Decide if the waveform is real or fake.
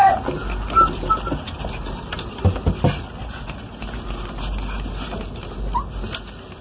real